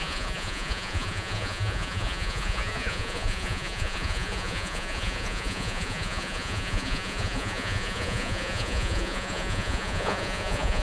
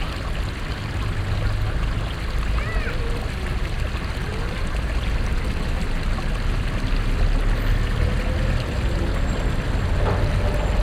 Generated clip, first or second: first